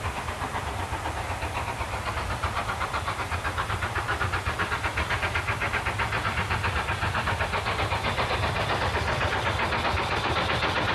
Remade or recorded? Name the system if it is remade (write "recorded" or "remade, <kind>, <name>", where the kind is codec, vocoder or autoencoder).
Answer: recorded